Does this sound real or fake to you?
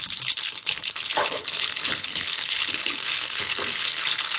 fake